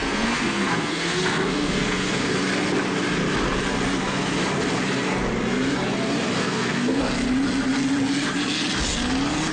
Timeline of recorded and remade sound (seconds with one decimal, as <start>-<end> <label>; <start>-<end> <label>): 0.0-2.4 remade; 2.4-6.4 recorded; 6.4-7.0 remade; 7.0-9.5 recorded